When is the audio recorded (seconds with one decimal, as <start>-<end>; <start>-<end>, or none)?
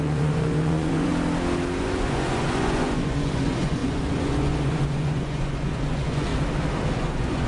1.1-1.8; 6.3-6.9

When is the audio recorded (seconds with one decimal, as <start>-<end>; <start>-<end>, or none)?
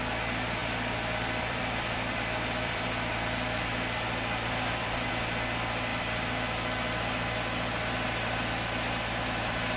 0.0-0.6; 5.1-5.9; 7.4-9.8